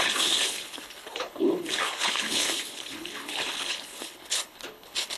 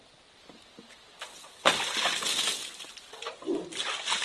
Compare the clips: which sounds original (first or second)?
second